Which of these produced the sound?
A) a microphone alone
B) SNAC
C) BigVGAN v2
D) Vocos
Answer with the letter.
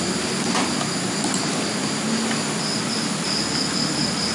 A